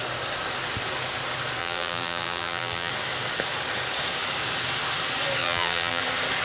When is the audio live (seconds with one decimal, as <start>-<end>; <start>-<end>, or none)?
0.0-1.6; 2.9-5.4; 6.0-6.4